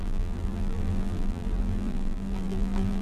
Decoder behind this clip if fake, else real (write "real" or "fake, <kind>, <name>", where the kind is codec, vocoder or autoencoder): fake, vocoder, BigVGAN v2